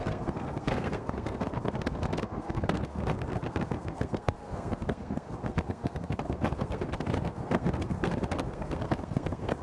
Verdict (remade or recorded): remade